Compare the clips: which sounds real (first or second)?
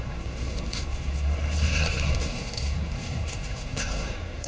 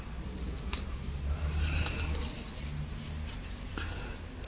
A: second